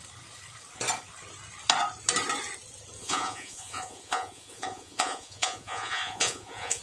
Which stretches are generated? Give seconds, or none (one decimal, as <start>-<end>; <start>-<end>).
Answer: 3.0-6.8